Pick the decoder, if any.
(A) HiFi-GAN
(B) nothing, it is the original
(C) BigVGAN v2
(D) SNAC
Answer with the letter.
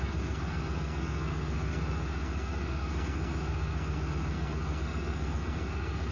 D